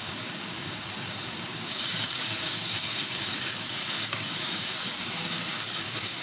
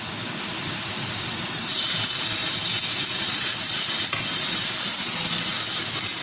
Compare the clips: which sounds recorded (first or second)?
second